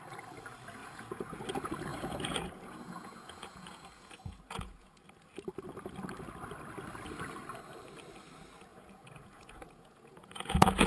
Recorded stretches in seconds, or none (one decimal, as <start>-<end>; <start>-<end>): 0.0-0.8; 1.4-1.9; 5.0-8.7